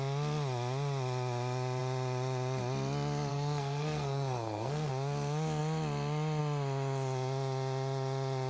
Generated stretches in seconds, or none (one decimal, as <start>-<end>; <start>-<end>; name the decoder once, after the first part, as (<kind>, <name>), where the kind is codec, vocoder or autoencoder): 3.3-4.9 (codec, SNAC)